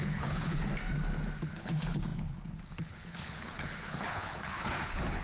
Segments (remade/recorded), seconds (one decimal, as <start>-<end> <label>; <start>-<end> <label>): 0.0-0.6 remade; 0.6-1.4 recorded; 1.4-5.2 remade